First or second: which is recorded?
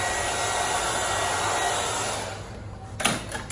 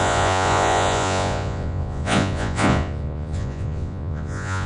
first